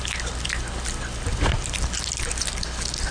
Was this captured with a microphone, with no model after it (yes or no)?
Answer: yes